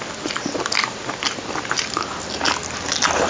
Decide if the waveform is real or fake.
real